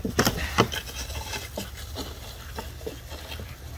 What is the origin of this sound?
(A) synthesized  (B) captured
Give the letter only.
B